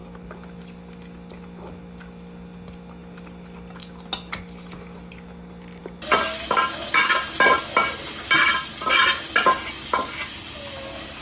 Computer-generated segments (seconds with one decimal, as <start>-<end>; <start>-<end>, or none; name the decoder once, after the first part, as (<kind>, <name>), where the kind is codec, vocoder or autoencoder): none